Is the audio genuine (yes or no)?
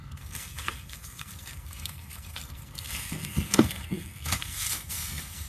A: no